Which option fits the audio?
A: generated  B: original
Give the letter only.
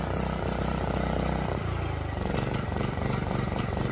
A